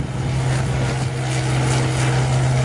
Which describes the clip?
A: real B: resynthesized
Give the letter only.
A